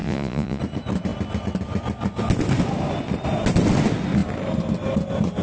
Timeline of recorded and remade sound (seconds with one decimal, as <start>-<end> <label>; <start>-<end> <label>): 0.0-0.6 remade; 0.6-5.4 recorded